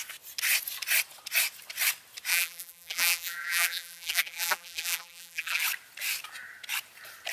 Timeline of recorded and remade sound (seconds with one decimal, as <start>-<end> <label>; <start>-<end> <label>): 0.0-2.3 recorded; 2.3-5.6 remade; 5.6-7.3 recorded